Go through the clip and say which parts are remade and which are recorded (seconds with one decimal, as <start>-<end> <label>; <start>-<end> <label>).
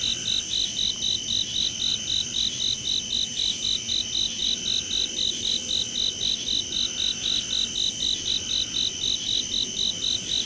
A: 0.0-10.5 recorded